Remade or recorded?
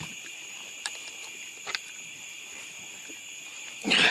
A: remade